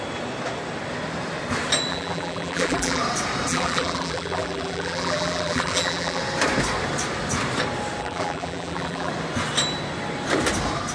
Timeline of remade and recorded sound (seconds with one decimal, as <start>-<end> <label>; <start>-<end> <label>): 0.0-1.9 recorded; 1.9-3.0 remade; 3.0-3.5 recorded; 3.5-6.2 remade; 6.2-8.0 recorded; 8.0-9.1 remade; 9.1-10.9 recorded